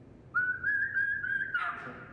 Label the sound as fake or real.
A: real